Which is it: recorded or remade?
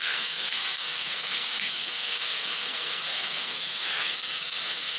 remade